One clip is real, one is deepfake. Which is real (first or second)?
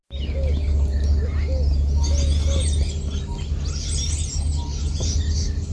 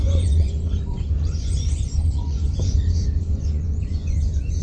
first